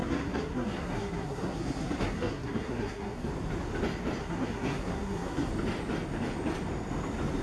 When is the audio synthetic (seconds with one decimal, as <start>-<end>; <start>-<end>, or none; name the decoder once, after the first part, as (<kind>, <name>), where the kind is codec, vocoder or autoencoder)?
0.0-3.3 (codec, SNAC); 4.2-5.5